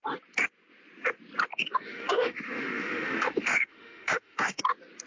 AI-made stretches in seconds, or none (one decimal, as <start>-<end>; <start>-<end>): 1.5-4.6